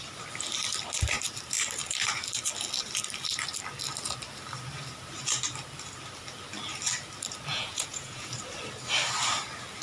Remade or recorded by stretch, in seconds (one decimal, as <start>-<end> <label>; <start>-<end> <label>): 0.0-7.5 recorded; 7.5-8.3 remade; 8.3-9.8 recorded

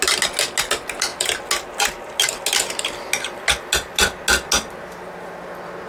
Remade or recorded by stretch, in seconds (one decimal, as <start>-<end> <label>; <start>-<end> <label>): 0.0-5.9 recorded

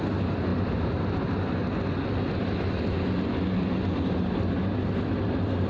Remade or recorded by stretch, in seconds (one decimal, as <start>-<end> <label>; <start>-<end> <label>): 0.0-5.7 recorded

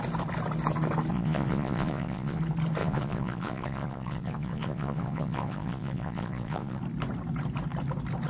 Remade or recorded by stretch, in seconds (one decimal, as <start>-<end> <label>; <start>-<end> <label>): 0.0-1.1 recorded; 1.1-2.4 remade; 2.4-2.8 recorded; 2.8-6.8 remade; 6.8-8.3 recorded

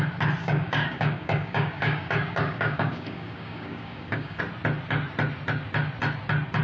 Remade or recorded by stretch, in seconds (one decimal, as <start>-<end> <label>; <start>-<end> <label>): 0.0-0.4 recorded; 0.4-4.4 remade; 4.4-6.6 recorded

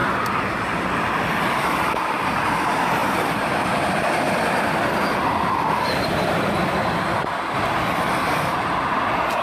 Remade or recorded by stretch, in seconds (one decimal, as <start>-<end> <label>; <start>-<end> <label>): 0.0-9.4 recorded

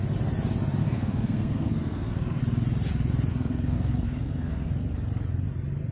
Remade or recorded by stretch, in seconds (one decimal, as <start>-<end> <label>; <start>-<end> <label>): 0.0-0.8 recorded; 0.8-2.4 remade; 2.4-3.3 recorded; 3.3-4.7 remade; 4.7-5.9 recorded

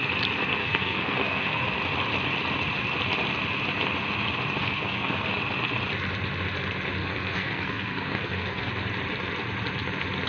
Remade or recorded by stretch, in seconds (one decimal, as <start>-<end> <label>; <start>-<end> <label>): 0.0-0.6 recorded; 0.6-1.6 remade; 1.6-4.6 recorded; 4.6-5.3 remade; 5.3-7.0 recorded; 7.0-8.7 remade; 8.7-10.3 recorded